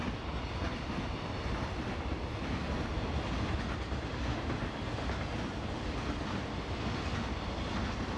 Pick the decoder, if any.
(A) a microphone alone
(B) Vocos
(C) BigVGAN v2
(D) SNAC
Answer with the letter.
A